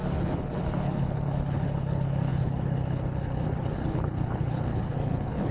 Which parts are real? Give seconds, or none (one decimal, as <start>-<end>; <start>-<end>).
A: none